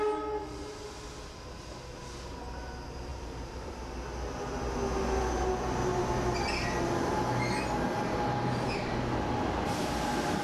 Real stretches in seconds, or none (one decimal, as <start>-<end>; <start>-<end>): 0.0-3.1; 3.7-10.4